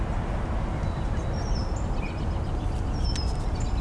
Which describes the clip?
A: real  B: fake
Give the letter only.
A